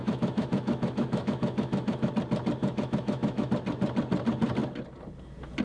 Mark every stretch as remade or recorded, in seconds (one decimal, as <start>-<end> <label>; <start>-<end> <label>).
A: 0.0-2.1 remade; 2.1-2.6 recorded; 2.6-3.5 remade; 3.5-5.6 recorded